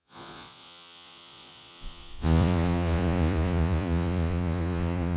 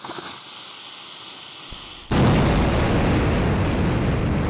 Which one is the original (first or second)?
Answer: second